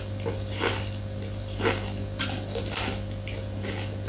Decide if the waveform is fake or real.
real